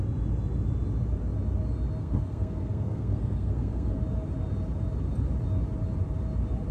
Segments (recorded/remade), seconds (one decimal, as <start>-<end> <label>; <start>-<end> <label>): 0.0-2.0 recorded; 2.0-4.0 remade; 4.0-6.7 recorded